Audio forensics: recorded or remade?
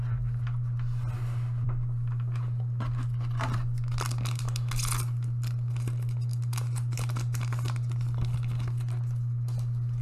recorded